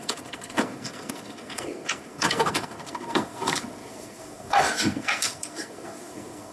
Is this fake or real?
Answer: fake